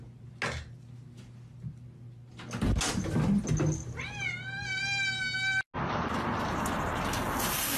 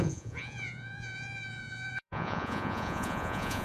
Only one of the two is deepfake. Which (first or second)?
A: second